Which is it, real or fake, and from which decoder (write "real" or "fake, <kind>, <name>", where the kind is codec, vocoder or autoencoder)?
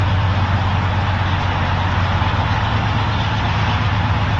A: real